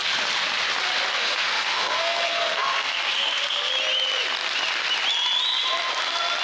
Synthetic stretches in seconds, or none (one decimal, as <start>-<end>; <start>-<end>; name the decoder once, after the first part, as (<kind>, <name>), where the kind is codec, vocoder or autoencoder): 1.1-3.7 (codec, SNAC)